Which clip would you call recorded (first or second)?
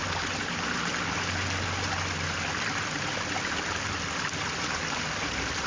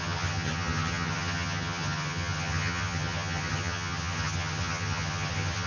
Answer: first